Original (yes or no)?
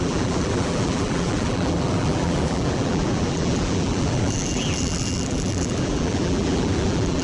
no